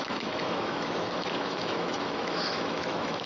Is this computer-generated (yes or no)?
yes